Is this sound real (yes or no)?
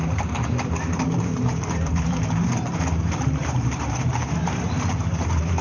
no